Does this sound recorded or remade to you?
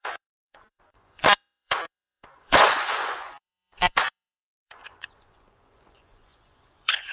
remade